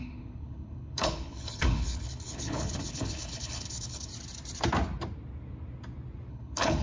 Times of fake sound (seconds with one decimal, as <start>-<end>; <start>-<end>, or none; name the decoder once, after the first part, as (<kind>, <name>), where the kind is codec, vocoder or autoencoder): 0.0-4.1 (codec, HILCodec); 6.3-6.8